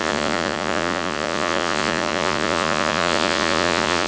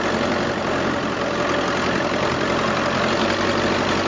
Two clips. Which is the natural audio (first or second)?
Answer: second